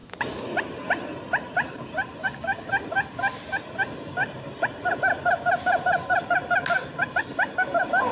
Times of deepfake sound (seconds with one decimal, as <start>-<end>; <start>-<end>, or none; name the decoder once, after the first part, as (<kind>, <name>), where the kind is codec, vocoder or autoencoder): 2.2-2.7 (codec, DAC)